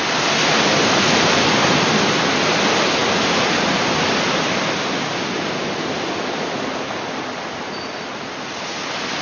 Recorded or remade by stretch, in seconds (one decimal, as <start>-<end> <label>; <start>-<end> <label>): 0.0-9.2 recorded